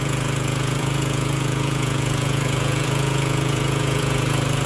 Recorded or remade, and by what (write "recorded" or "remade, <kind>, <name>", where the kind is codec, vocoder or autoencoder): remade, vocoder, Vocos